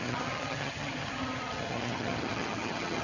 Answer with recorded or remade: remade